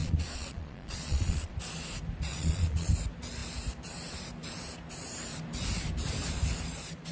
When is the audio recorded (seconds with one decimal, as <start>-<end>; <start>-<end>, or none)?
1.5-2.3; 2.9-7.1